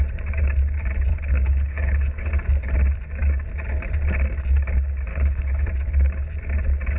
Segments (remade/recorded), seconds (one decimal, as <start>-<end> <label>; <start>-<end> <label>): 0.0-1.1 recorded; 1.1-2.3 remade; 2.3-5.1 recorded; 5.1-5.7 remade; 5.7-7.0 recorded

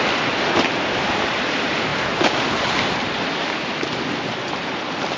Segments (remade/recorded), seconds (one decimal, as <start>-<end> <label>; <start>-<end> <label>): 0.0-5.2 remade